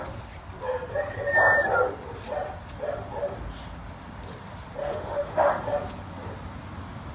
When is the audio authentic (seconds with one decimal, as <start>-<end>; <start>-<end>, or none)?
0.0-4.8; 5.5-7.1